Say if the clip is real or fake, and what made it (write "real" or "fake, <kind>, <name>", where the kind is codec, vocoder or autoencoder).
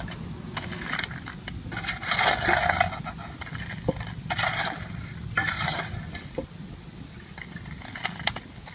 real